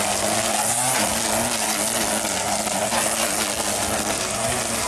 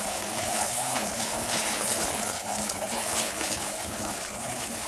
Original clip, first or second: first